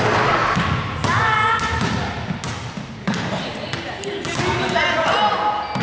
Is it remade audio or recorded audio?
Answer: recorded